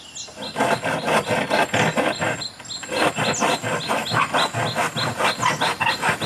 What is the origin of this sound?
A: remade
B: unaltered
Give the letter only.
B